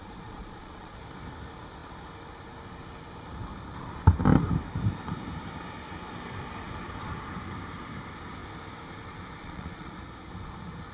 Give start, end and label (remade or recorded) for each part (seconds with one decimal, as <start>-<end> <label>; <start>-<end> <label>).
0.0-1.0 remade; 1.0-9.4 recorded; 9.4-9.9 remade; 9.9-10.9 recorded